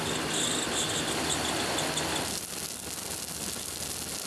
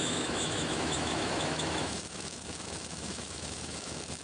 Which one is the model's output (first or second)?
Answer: second